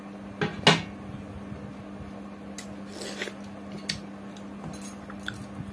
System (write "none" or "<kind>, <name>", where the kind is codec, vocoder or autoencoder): none